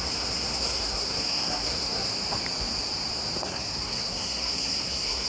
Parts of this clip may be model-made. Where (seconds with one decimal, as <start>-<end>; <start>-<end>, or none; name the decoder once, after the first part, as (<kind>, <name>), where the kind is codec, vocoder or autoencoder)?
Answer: 0.0-2.1 (codec, SNAC); 3.4-5.3